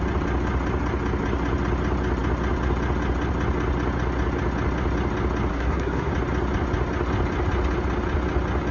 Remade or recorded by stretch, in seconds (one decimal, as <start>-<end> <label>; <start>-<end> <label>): 0.0-5.5 recorded; 5.5-6.1 remade; 6.1-8.7 recorded